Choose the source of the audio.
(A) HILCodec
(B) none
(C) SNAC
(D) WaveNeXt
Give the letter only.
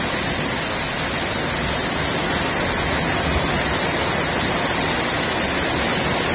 B